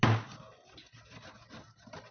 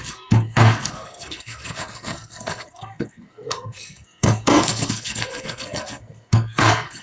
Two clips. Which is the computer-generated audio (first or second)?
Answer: second